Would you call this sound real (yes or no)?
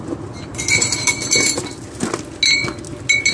yes